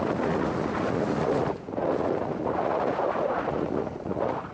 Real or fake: fake